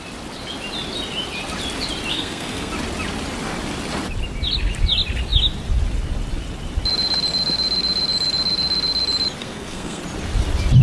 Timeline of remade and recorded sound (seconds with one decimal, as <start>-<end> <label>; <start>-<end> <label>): 0.0-2.1 recorded; 2.1-2.7 remade; 2.7-9.4 recorded; 9.4-10.0 remade; 10.0-10.8 recorded